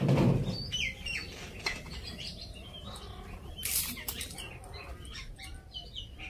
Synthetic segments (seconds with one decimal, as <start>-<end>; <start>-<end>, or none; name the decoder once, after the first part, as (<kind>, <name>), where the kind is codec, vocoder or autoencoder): 2.1-4.5 (vocoder, BigVGAN v2)